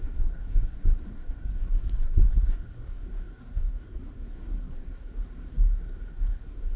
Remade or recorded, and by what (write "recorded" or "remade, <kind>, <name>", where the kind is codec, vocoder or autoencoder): remade, codec, SNAC